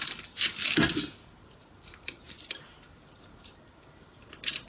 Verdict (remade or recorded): recorded